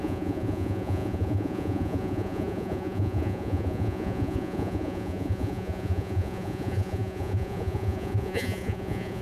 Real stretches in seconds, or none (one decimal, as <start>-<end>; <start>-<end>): none